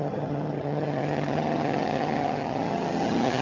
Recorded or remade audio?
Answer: remade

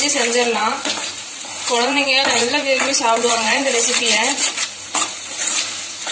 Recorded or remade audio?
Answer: remade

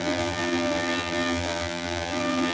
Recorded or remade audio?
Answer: remade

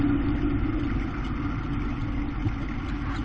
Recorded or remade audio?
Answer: recorded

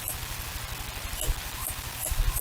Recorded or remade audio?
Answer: recorded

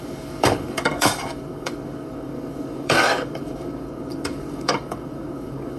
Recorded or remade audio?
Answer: remade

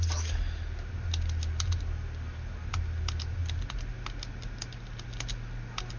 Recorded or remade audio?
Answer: recorded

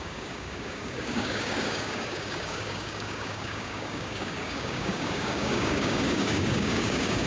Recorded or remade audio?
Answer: remade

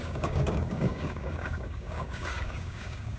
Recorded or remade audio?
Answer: remade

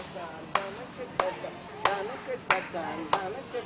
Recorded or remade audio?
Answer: recorded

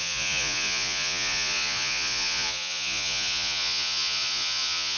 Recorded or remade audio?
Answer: remade